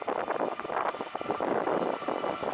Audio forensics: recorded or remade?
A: recorded